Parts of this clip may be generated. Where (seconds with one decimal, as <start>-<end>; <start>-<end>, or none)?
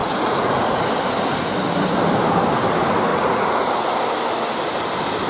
0.0-0.8; 3.1-3.9